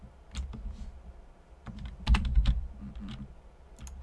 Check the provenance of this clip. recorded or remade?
recorded